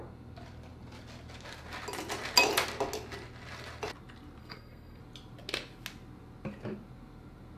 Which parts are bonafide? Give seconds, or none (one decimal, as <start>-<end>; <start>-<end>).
0.0-4.4; 5.0-7.6